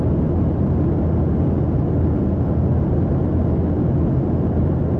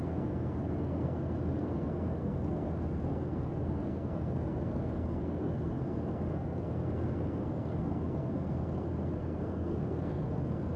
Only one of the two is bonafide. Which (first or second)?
first